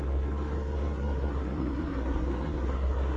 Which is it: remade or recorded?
remade